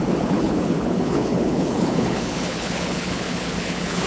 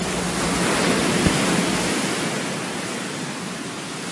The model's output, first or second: first